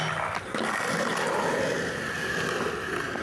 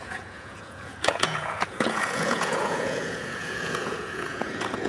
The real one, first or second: first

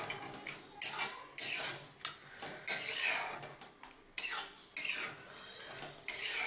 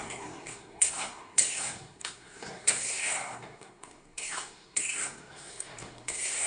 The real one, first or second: first